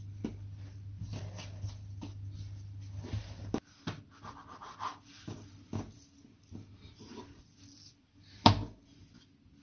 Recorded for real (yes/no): yes